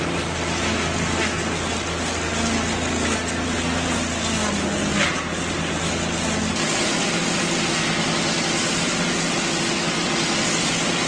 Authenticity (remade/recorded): recorded